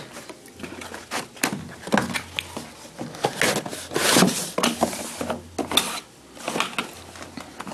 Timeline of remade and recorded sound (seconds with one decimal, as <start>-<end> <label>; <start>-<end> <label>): 0.0-7.7 recorded